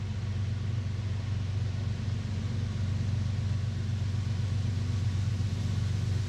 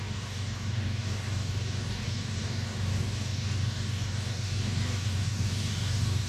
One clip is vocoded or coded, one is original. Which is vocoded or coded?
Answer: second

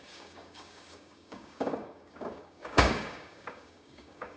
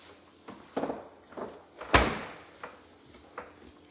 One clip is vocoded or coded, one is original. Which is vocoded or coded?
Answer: first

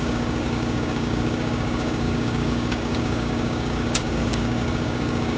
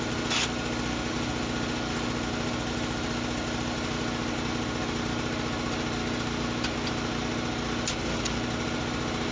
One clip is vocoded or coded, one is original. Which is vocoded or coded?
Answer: first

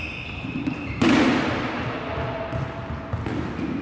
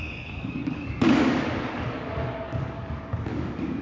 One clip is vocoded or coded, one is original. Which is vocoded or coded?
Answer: second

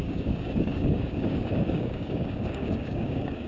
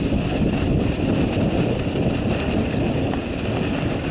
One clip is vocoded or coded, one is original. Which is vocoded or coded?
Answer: first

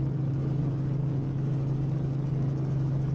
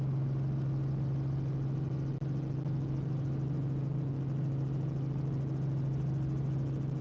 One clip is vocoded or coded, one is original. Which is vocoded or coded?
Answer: first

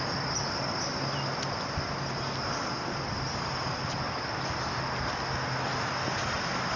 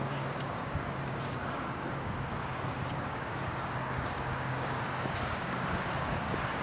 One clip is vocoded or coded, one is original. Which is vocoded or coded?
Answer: second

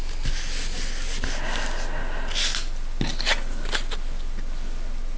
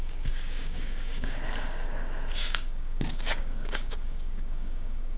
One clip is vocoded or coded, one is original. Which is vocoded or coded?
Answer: second